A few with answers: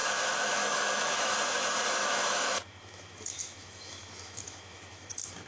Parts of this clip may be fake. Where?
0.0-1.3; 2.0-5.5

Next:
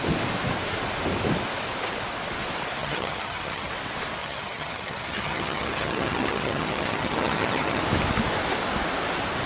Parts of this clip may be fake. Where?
2.8-3.7; 4.2-7.8

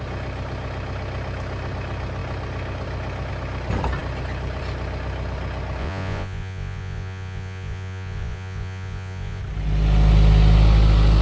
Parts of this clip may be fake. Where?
5.8-9.4

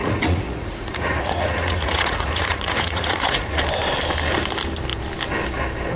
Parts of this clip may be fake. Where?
0.0-3.6